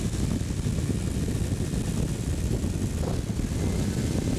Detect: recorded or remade recorded